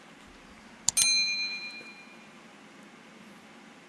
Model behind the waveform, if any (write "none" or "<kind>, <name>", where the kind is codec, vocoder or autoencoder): none